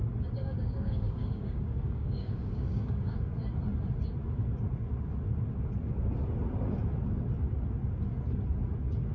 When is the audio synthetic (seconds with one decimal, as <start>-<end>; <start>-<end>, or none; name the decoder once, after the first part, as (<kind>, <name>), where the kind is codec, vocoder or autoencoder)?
0.4-3.3 (codec, DAC)